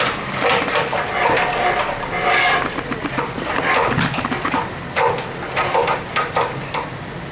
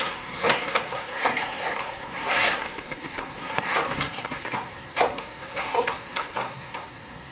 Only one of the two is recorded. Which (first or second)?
first